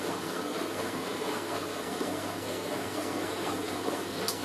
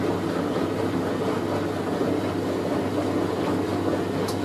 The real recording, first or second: second